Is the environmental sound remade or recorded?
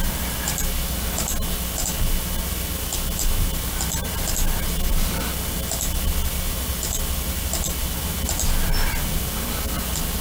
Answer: recorded